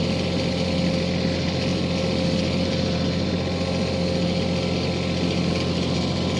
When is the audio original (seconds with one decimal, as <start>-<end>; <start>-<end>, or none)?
0.0-6.4

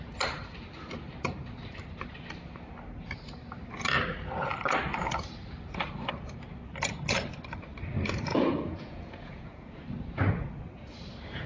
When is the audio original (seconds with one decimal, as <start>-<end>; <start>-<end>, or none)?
0.0-8.3; 9.8-11.5

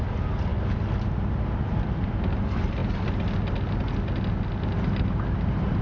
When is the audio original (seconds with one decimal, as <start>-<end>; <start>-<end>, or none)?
0.0-5.8

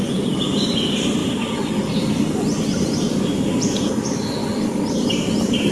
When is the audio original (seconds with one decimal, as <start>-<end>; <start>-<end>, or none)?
1.2-1.9; 4.4-4.9